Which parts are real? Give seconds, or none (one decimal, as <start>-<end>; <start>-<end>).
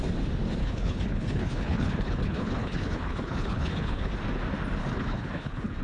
0.0-0.6; 4.1-4.8